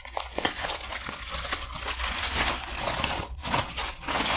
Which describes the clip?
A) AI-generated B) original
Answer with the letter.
A